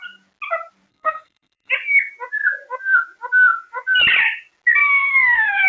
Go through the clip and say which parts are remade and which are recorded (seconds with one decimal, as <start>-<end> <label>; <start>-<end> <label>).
0.0-0.9 recorded; 0.9-1.7 remade; 1.7-4.8 recorded; 4.8-5.7 remade